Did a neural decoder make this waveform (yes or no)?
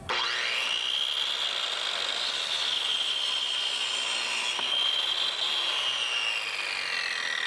no